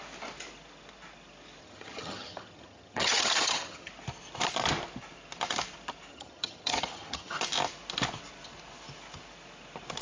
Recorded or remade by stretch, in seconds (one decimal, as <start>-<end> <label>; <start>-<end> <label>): 0.0-1.6 recorded; 1.6-3.9 remade; 3.9-6.1 recorded; 6.1-7.4 remade; 7.4-10.0 recorded